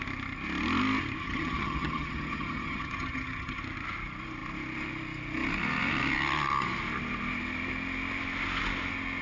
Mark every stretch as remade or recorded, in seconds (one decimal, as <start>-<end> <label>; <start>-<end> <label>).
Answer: 0.0-1.2 recorded; 1.2-3.6 remade; 3.6-9.2 recorded

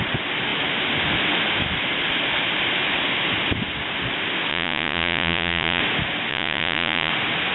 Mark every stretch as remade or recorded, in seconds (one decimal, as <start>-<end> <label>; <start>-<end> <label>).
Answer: 0.0-4.5 recorded; 4.5-5.8 remade; 5.8-6.3 recorded; 6.3-7.1 remade; 7.1-7.5 recorded

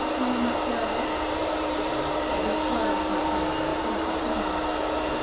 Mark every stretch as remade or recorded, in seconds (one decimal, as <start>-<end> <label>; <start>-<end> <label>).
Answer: 0.0-1.4 recorded; 1.4-2.4 remade; 2.4-2.8 recorded; 2.8-3.3 remade; 3.3-3.7 recorded; 3.7-4.4 remade; 4.4-5.2 recorded

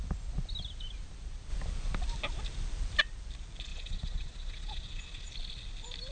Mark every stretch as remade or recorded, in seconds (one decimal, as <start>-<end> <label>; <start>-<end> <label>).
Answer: 0.0-3.7 recorded; 3.7-5.3 remade; 5.3-6.1 recorded

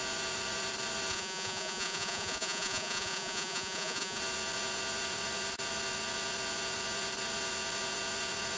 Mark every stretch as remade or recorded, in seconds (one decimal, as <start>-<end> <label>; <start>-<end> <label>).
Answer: 0.0-1.1 recorded; 1.1-4.2 remade; 4.2-8.6 recorded

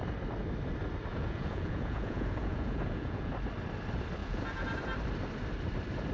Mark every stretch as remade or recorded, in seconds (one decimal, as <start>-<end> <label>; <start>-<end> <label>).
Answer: 0.0-1.1 recorded; 1.1-3.3 remade; 3.3-4.2 recorded; 4.2-4.7 remade; 4.7-6.1 recorded

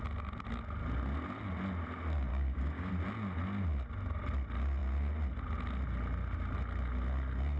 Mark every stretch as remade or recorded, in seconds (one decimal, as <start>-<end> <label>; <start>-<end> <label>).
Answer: 0.0-2.3 recorded; 2.3-2.9 remade; 2.9-7.6 recorded

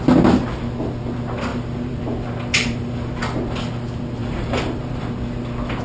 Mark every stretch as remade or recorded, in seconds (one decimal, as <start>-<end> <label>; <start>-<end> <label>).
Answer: 0.0-1.5 recorded; 1.5-2.0 remade; 2.0-2.5 recorded; 2.5-3.1 remade; 3.1-4.2 recorded; 4.2-5.0 remade; 5.0-5.8 recorded